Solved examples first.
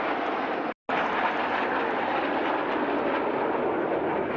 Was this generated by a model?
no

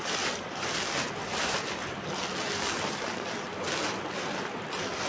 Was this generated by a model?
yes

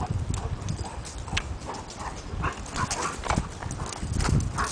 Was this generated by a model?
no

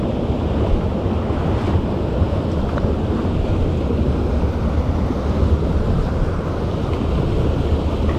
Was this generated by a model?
no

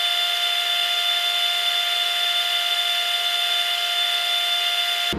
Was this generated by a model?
no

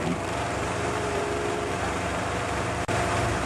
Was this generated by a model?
yes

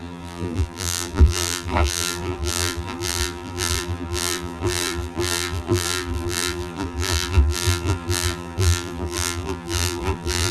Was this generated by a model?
yes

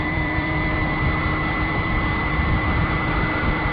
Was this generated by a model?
yes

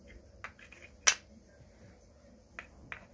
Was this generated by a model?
no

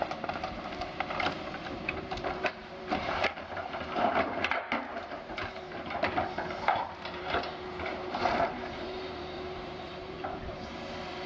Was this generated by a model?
yes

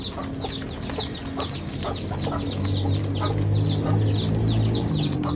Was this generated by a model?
no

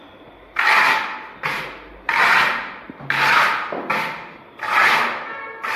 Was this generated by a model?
no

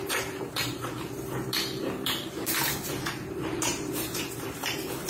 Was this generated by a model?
yes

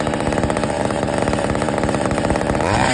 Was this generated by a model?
yes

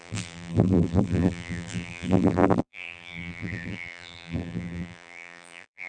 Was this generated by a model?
yes